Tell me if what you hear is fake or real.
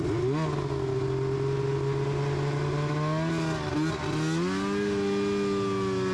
real